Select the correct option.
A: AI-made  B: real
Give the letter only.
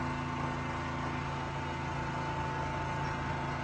B